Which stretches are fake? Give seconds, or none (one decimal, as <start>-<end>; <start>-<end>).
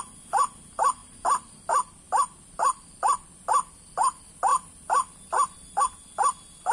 none